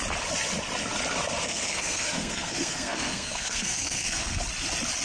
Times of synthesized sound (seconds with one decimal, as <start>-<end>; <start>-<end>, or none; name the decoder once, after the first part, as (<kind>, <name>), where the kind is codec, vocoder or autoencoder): 1.4-4.4 (codec, SNAC)